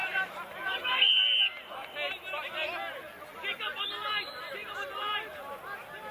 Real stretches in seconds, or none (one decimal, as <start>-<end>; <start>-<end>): 1.1-6.1